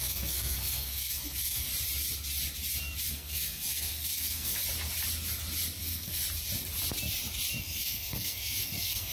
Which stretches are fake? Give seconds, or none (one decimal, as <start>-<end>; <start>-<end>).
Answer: 0.0-1.7; 3.1-4.6; 5.8-6.2; 7.6-9.1